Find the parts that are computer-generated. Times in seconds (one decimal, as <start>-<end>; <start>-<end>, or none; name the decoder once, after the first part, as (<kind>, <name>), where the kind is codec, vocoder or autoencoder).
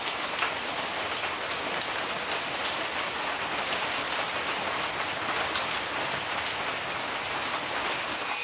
none